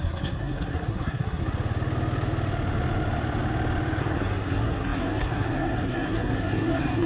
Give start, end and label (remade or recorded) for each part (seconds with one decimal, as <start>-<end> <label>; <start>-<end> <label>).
0.0-1.4 remade; 1.4-4.0 recorded; 4.0-7.1 remade